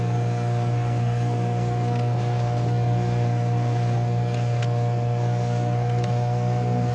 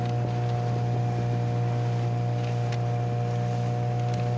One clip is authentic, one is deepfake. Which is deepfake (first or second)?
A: first